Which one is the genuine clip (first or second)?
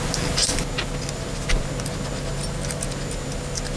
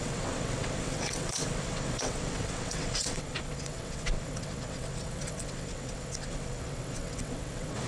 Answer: first